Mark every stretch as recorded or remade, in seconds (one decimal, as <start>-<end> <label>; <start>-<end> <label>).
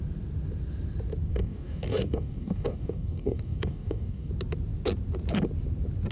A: 0.0-1.3 recorded; 1.3-4.3 remade; 4.3-6.1 recorded